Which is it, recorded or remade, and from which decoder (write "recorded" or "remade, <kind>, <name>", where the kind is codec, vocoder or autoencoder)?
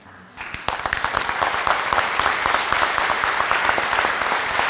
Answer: recorded